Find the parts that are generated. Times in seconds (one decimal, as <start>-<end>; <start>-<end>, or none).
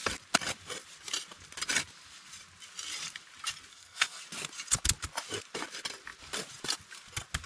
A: 3.7-4.2